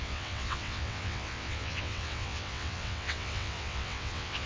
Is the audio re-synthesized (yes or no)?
yes